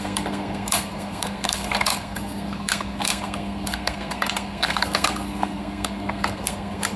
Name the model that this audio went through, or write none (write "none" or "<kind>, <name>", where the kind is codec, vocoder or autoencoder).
codec, SNAC